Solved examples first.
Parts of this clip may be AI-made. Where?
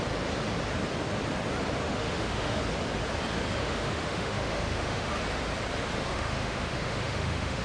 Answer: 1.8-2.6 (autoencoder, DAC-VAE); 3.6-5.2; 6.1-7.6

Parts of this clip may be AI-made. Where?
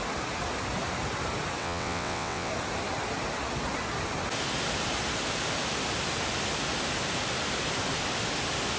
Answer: 1.6-2.5 (vocoder, WaveNeXt)